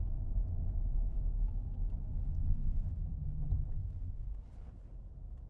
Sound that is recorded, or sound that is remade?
recorded